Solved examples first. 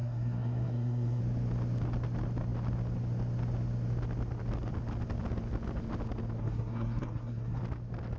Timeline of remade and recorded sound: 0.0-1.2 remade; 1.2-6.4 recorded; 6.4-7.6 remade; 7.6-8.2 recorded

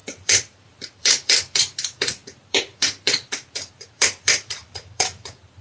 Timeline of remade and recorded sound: 0.0-5.6 remade

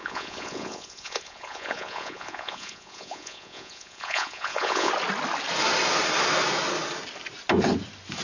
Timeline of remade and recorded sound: 0.0-4.9 remade; 4.9-8.2 recorded